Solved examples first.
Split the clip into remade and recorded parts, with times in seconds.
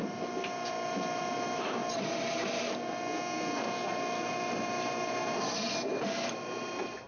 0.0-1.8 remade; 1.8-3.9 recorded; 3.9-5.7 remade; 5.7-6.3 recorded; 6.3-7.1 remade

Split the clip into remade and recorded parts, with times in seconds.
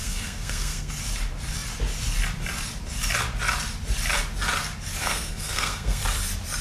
0.0-0.9 remade; 0.9-5.0 recorded; 5.0-6.0 remade; 6.0-6.6 recorded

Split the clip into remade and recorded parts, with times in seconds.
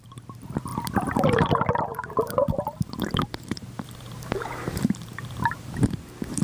0.0-0.7 recorded; 0.7-1.5 remade; 1.5-1.9 recorded; 1.9-5.7 remade; 5.7-6.4 recorded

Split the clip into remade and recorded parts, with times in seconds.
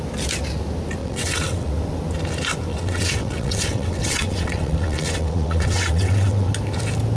0.0-1.0 recorded; 1.0-1.7 remade; 1.7-2.7 recorded; 2.7-6.5 remade; 6.5-7.2 recorded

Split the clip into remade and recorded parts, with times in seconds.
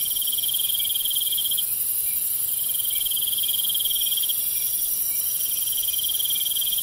0.0-1.4 recorded; 1.4-5.3 remade; 5.3-6.8 recorded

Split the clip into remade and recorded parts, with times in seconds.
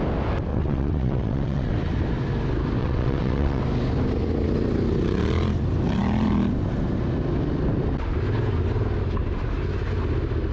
0.0-0.5 recorded; 0.5-1.7 remade; 1.7-2.8 recorded; 2.8-3.6 remade; 3.6-10.5 recorded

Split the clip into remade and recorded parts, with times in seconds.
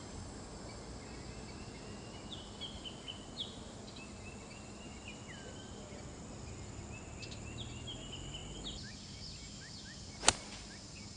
0.0-11.2 recorded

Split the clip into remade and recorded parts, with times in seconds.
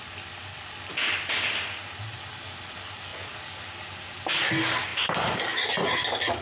0.0-6.4 recorded